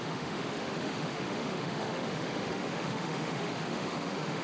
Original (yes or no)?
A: no